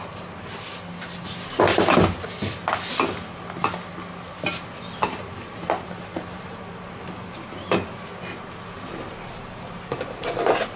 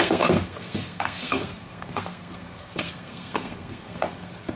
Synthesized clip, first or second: second